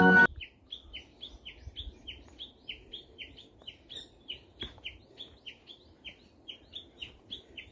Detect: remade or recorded recorded